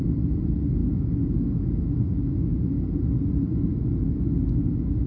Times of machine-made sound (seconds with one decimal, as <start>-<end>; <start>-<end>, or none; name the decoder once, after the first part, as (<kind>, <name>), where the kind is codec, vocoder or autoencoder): 0.8-2.7 (autoencoder, DAC-VAE); 3.7-5.1